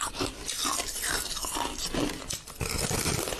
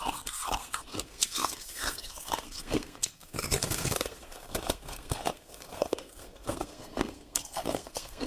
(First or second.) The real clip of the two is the first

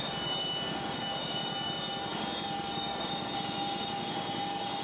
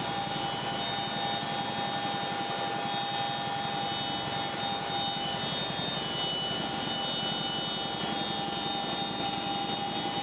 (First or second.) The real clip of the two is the second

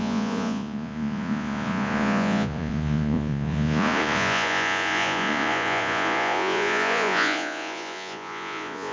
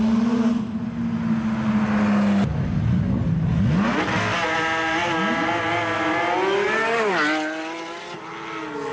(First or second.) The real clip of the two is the second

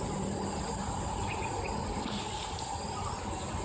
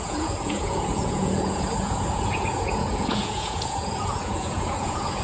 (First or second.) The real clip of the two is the first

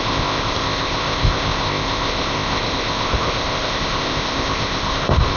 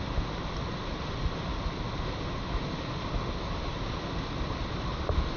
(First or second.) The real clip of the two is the second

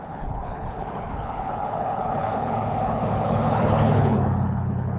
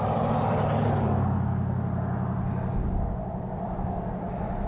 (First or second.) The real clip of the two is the second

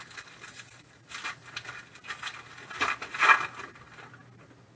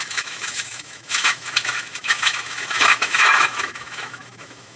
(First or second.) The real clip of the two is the first